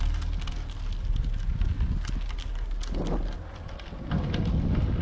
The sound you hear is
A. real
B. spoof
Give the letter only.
A